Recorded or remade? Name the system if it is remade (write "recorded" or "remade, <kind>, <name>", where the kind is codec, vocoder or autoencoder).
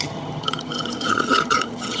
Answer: remade, vocoder, HiFi-GAN